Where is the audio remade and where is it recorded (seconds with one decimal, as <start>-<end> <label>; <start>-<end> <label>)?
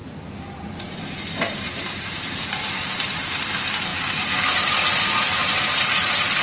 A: 0.0-3.2 remade; 3.2-3.9 recorded; 3.9-6.4 remade